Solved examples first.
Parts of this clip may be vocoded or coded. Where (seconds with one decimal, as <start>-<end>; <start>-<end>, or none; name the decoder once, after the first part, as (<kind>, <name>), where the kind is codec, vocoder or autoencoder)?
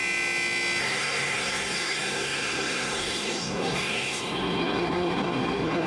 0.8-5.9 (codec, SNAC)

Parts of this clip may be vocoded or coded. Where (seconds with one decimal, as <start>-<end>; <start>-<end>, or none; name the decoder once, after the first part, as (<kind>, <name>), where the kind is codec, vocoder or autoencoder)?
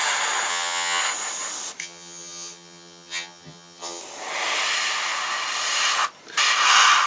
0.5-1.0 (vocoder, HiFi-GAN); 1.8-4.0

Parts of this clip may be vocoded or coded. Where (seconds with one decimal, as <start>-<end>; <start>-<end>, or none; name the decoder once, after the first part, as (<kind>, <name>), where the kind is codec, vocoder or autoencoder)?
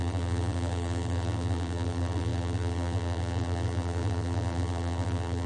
0.0-5.5 (vocoder, BigVGAN v2)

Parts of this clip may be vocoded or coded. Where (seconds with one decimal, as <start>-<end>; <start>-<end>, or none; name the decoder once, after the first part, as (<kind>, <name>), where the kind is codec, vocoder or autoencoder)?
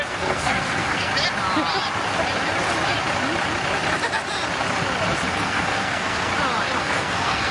0.0-1.1 (codec, SNAC); 5.3-6.3; 6.8-7.5